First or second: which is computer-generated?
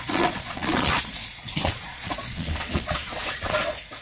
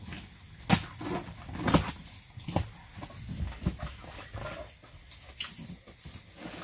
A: first